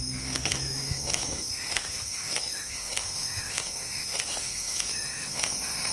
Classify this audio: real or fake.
fake